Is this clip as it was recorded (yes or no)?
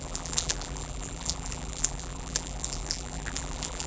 no